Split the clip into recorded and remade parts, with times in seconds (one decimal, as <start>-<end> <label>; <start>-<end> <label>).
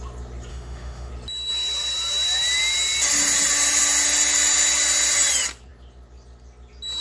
0.0-0.5 recorded; 0.5-1.1 remade; 1.1-7.0 recorded